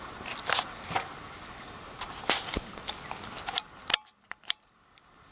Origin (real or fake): real